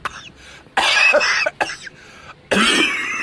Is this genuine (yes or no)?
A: yes